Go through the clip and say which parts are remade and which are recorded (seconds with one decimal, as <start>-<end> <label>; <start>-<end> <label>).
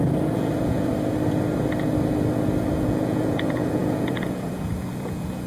0.0-0.9 remade; 0.9-2.7 recorded; 2.7-5.5 remade